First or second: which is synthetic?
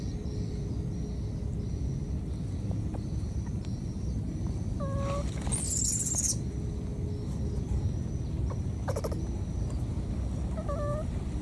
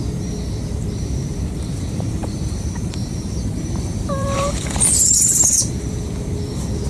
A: second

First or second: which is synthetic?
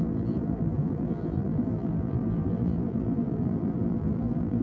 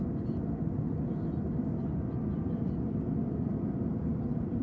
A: first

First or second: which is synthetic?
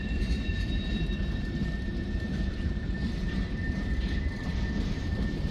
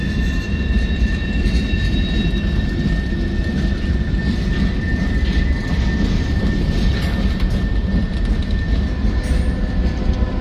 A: first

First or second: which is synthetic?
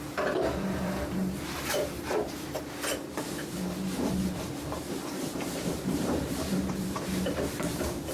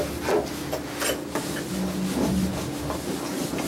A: first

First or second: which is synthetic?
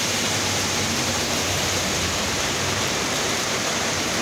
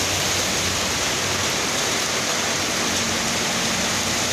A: first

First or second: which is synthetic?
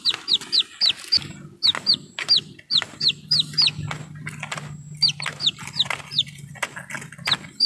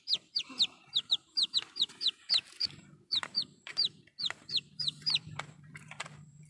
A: second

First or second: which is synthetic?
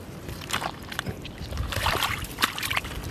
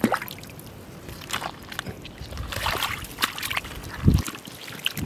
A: first